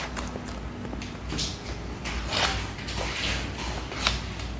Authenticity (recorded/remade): recorded